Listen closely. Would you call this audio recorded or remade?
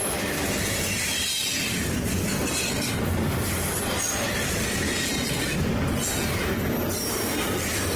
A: recorded